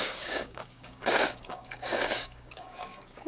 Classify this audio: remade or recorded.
remade